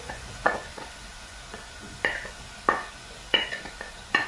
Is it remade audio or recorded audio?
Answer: remade